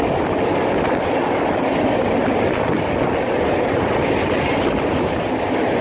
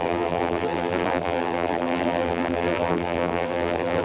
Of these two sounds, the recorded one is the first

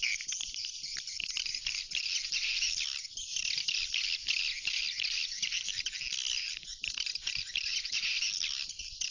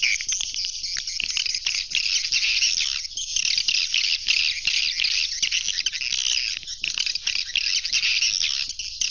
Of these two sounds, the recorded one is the second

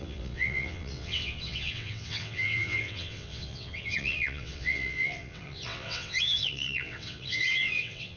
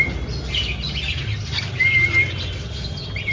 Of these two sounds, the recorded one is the second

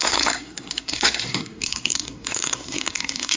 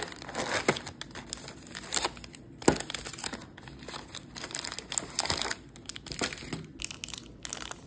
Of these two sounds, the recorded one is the second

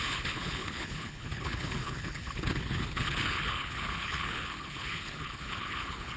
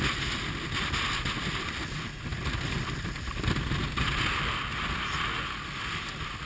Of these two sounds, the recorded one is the second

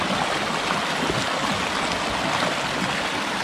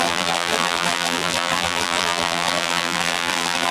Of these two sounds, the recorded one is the first